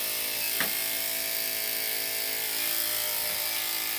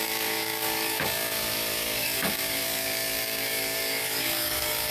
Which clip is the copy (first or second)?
second